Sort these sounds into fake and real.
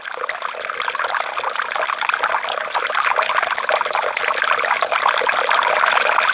real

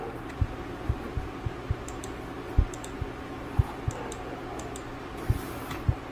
fake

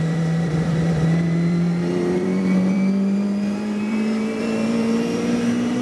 fake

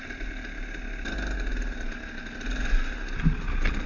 real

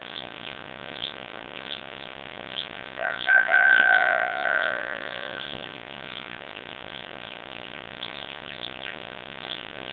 fake